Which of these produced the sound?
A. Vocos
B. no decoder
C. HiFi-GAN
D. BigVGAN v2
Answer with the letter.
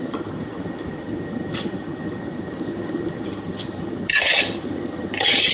C